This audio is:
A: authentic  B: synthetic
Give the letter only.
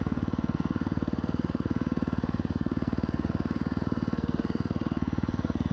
B